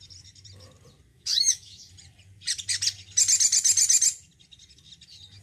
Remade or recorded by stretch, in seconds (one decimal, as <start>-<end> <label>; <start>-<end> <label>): 0.0-1.1 recorded; 1.1-1.9 remade; 1.9-5.4 recorded